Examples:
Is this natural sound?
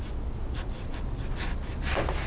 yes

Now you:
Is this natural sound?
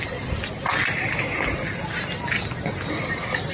yes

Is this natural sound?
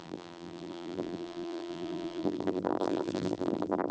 no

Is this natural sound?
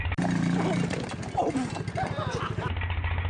yes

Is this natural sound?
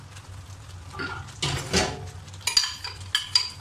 yes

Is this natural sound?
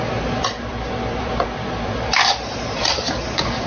no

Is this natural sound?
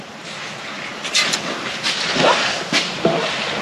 yes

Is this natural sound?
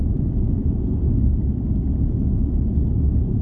yes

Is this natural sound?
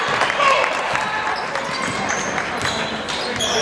yes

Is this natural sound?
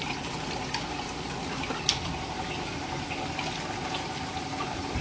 no